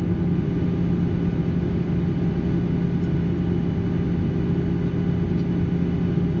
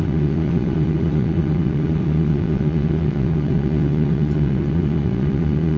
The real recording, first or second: first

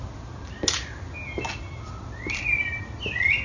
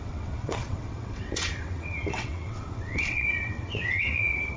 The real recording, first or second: first